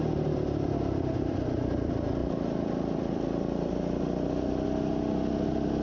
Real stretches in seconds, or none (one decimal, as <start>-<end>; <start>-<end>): 0.0-2.2; 3.7-5.8